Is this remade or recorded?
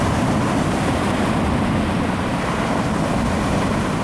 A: recorded